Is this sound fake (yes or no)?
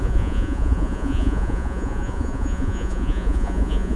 yes